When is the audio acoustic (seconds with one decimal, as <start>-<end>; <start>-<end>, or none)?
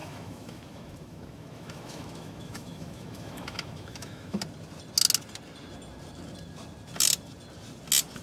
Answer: 4.4-8.2